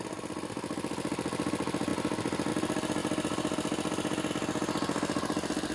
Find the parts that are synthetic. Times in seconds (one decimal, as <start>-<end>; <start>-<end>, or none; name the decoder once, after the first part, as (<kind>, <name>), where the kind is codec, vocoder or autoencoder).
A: none